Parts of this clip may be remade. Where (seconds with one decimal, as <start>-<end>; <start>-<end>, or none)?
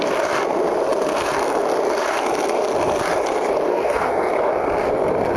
3.7-4.3